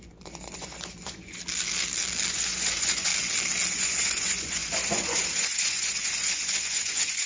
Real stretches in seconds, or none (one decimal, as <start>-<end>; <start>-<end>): 1.4-2.3; 3.1-3.7